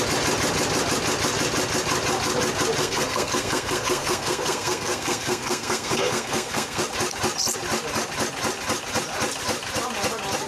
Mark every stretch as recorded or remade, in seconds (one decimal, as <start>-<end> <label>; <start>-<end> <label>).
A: 0.0-2.8 recorded; 2.8-6.8 remade; 6.8-10.5 recorded